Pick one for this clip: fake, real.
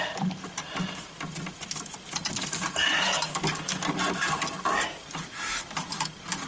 real